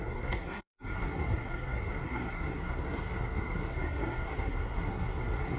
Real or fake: fake